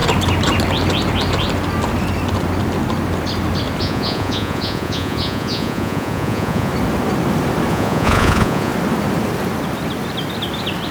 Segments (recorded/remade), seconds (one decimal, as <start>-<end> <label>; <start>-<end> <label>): 0.0-3.8 recorded; 3.8-6.7 remade; 6.7-7.7 recorded; 7.7-8.7 remade; 8.7-10.9 recorded